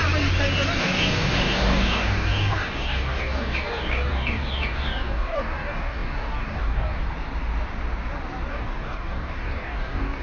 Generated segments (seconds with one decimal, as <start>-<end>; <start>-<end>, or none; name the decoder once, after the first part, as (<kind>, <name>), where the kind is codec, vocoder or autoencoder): 0.8-7.0 (codec, DAC); 8.5-10.2